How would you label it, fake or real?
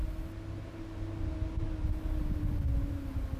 real